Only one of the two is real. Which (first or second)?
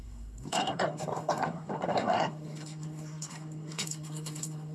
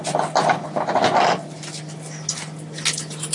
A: second